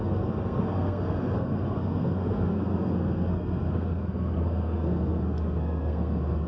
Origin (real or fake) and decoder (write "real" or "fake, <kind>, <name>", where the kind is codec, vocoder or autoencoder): fake, codec, SNAC